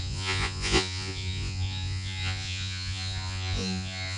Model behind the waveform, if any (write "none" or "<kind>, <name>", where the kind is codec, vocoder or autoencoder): vocoder, Vocos